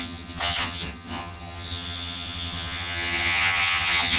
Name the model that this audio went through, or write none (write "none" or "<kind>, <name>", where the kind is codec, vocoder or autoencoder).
vocoder, HiFi-GAN